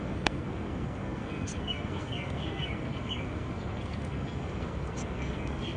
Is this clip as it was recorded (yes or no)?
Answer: no